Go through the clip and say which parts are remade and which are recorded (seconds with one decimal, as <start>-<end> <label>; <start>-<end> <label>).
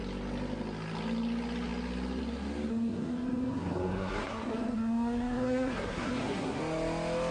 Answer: 0.0-2.7 recorded; 2.7-6.6 remade; 6.6-7.3 recorded